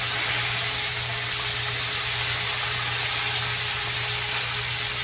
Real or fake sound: real